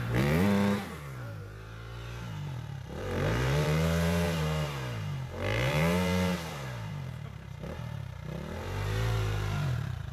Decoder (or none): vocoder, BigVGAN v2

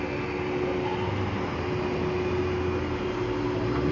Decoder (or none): none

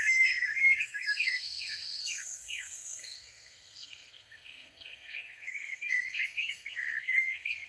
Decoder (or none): codec, SNAC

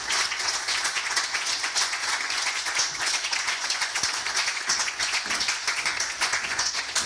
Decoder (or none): vocoder, Vocos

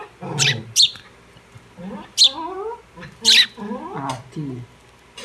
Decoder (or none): none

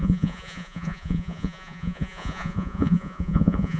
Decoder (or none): vocoder, Vocos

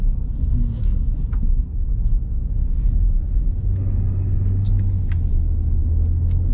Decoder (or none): none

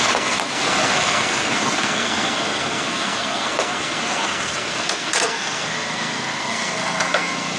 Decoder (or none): codec, SNAC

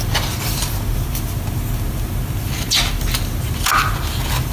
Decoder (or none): none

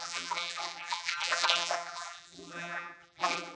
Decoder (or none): vocoder, BigVGAN v2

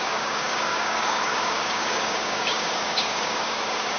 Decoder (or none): codec, DAC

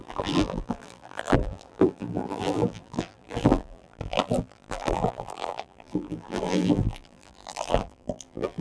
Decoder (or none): vocoder, BigVGAN v2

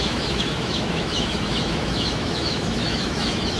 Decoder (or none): autoencoder, DAC-VAE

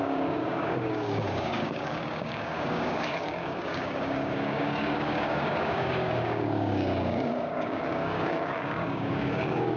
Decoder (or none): codec, DAC